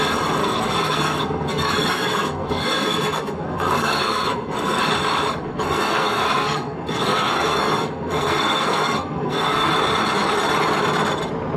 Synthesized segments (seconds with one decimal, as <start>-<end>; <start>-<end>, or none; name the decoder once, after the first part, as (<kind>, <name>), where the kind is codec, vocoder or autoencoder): 0.4-4.8 (codec, SNAC); 5.4-9.7